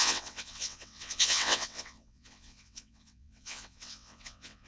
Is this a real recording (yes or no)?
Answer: no